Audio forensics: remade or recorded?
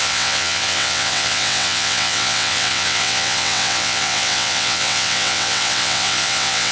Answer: remade